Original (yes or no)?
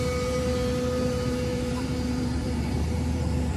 no